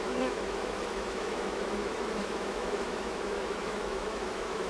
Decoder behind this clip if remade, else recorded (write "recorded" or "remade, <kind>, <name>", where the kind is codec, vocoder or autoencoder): remade, autoencoder, DAC-VAE